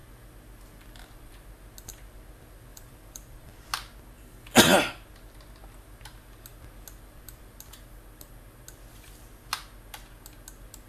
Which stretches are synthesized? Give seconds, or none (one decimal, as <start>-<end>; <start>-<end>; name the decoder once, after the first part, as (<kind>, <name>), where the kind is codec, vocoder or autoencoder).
2.7-3.7 (vocoder, BigVGAN v2)